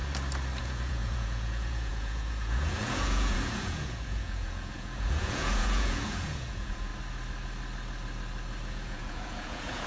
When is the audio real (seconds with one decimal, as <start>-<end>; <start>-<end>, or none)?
0.0-0.6; 6.9-8.7